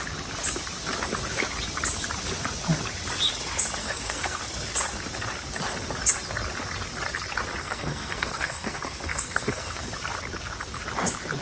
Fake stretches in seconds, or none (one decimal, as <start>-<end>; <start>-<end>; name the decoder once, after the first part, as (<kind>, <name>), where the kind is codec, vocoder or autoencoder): 3.8-4.4 (codec, SNAC); 7.6-9.9